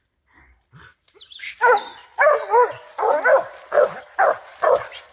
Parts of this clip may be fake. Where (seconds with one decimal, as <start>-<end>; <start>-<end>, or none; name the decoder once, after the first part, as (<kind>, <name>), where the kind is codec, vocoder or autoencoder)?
none